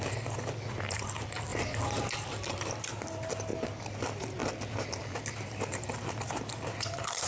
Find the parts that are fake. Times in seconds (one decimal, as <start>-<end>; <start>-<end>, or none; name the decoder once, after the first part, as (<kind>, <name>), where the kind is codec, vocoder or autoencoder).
0.0-3.5 (vocoder, BigVGAN v2); 4.0-4.4; 5.3-7.3